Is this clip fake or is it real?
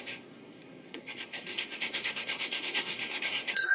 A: fake